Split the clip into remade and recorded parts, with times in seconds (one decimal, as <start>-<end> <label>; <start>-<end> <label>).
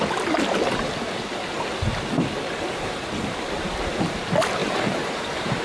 0.0-4.6 recorded; 4.6-5.6 remade